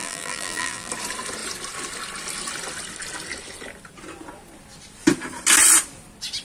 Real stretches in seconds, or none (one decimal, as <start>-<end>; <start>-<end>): 0.9-6.4

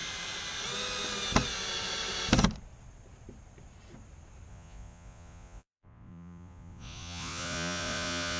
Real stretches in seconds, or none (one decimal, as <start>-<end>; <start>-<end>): 0.0-4.5

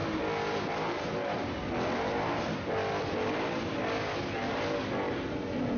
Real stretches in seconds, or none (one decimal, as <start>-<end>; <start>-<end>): 0.0-5.8